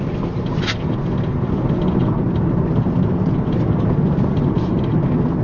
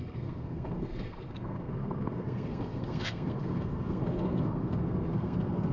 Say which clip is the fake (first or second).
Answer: second